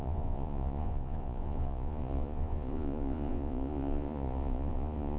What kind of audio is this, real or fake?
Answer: fake